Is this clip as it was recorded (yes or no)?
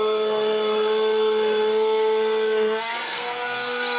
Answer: no